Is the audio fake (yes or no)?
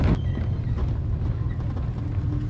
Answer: no